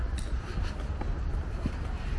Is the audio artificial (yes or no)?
no